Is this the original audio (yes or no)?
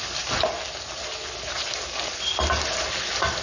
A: yes